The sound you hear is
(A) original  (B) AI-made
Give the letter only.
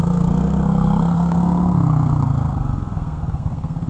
B